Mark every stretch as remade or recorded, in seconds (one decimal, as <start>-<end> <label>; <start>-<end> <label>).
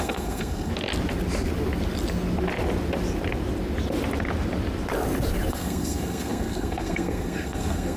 0.0-0.7 remade; 0.7-5.5 recorded; 5.5-8.0 remade